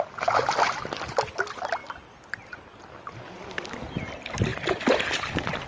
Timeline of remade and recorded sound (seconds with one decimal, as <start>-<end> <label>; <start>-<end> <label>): 0.0-5.7 recorded